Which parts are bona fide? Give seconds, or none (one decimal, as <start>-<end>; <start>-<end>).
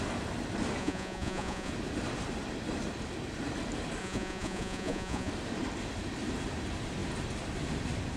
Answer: 0.0-0.8; 1.7-4.0; 5.3-8.2